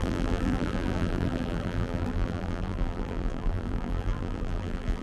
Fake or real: fake